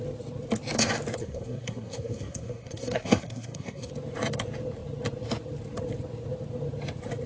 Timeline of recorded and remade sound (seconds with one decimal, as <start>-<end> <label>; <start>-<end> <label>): 0.0-1.2 recorded; 1.2-3.9 remade; 3.9-7.3 recorded